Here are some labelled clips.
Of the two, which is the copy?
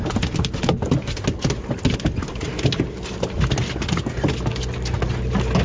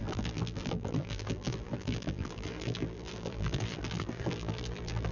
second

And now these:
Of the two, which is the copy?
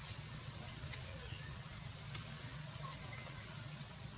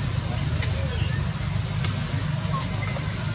first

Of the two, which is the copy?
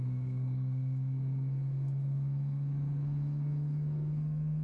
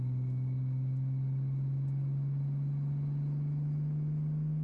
first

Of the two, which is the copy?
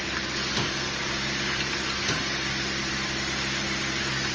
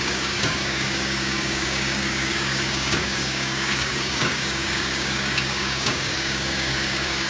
second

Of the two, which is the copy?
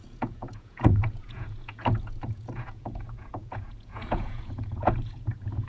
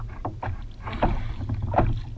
first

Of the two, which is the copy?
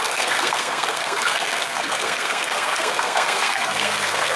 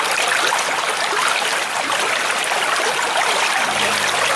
first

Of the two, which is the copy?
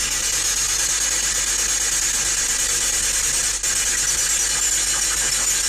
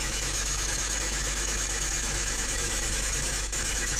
second